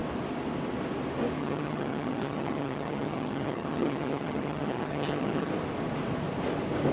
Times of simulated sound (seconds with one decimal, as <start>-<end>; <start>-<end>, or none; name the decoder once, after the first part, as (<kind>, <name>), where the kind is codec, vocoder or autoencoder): 1.4-5.5 (vocoder, HiFi-GAN)